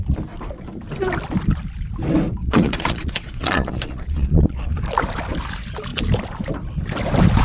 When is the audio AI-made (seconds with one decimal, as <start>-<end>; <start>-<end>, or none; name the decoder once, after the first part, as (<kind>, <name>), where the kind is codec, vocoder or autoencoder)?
2.4-4.8 (vocoder, Vocos)